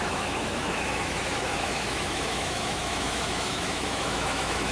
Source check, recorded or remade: remade